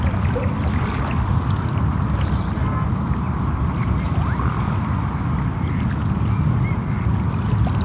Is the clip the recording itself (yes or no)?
yes